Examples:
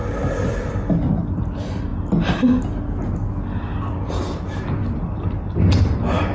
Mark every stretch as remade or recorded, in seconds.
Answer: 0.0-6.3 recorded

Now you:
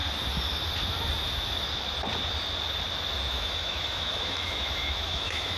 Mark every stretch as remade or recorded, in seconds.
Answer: 0.0-3.3 recorded; 3.3-5.6 remade

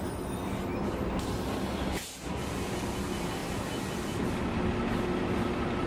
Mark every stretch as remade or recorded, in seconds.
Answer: 0.0-5.9 recorded

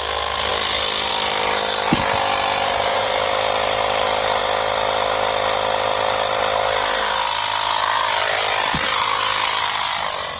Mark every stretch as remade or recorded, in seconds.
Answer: 0.0-4.4 remade; 4.4-9.6 recorded; 9.6-10.4 remade